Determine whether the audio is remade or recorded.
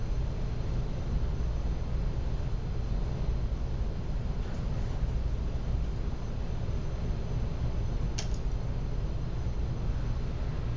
recorded